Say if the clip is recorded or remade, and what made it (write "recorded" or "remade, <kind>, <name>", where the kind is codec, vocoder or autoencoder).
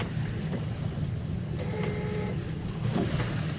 recorded